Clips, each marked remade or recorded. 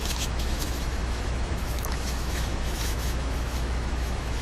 remade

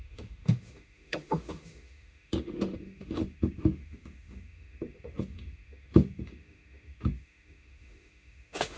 remade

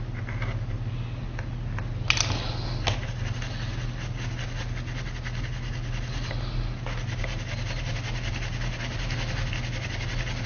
recorded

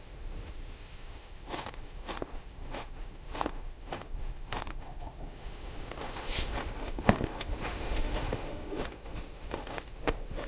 remade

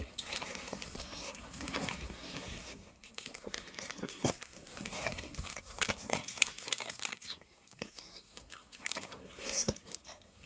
remade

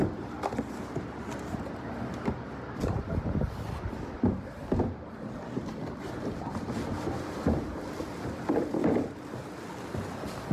recorded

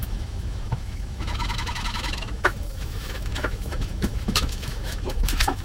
remade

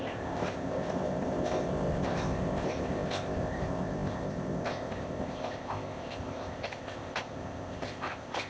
remade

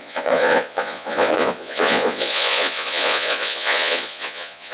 remade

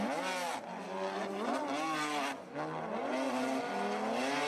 recorded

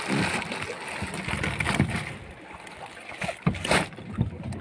recorded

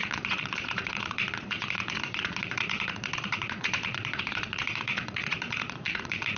remade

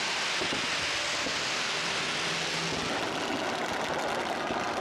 recorded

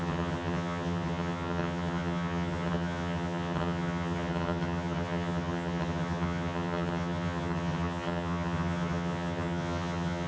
remade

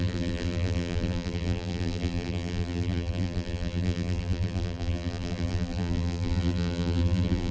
remade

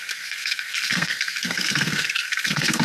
remade